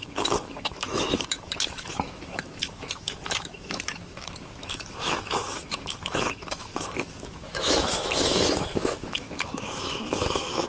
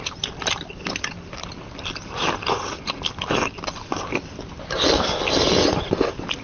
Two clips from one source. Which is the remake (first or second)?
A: first